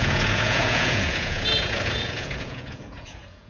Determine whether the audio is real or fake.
fake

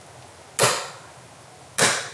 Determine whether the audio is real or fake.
real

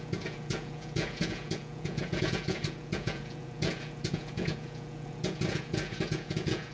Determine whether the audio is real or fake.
fake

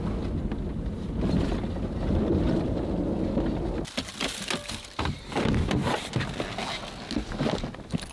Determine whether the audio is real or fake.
real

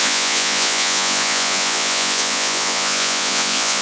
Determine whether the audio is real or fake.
fake